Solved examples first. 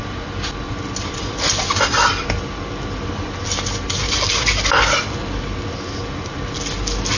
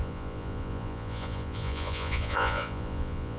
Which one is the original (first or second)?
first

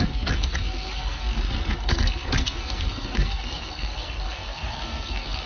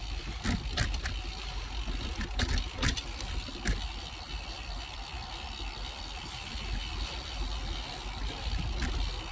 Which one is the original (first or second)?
second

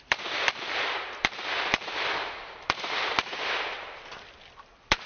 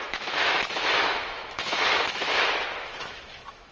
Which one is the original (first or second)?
first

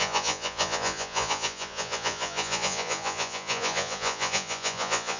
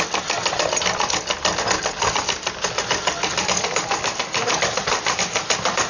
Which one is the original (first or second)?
second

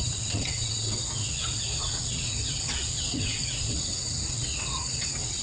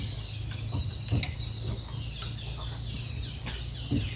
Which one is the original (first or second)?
second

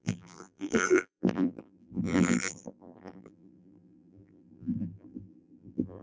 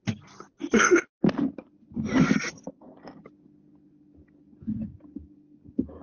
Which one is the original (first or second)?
second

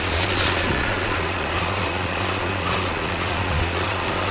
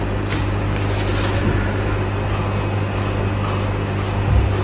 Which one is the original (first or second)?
second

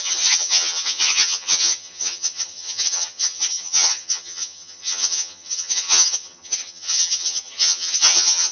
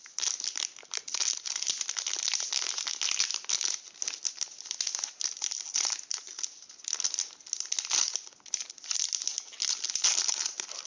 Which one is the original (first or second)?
second